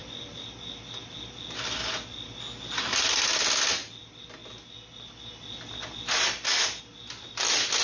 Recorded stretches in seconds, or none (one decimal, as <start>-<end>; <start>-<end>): 0.0-7.8